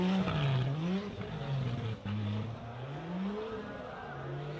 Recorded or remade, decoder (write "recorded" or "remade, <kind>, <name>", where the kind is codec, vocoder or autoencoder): recorded